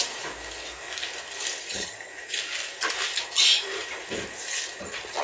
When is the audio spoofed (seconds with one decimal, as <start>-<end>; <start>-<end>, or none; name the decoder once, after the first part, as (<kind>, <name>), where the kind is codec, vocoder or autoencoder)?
1.7-2.1 (vocoder, HiFi-GAN); 4.8-5.2